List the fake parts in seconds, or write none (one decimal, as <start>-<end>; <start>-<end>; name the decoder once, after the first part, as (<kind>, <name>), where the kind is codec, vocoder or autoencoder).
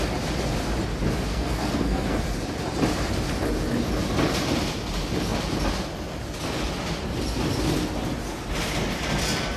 1.3-2.2 (codec, SNAC)